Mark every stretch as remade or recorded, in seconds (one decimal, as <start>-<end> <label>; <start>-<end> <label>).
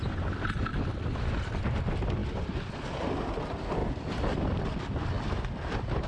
0.0-0.7 recorded; 0.7-1.3 remade; 1.3-2.2 recorded; 2.2-2.7 remade; 2.7-3.8 recorded; 3.8-4.6 remade; 4.6-6.1 recorded